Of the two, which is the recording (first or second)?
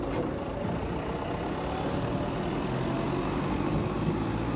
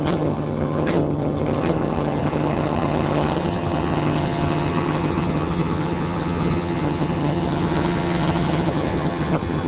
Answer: first